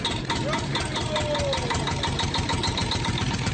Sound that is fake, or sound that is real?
real